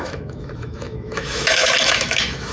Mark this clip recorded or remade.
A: remade